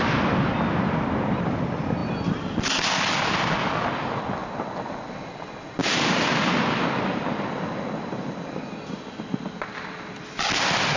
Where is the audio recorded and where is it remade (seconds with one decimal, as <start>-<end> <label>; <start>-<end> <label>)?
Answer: 0.0-5.8 recorded; 5.8-10.4 remade; 10.4-11.0 recorded